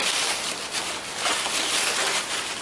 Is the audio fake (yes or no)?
no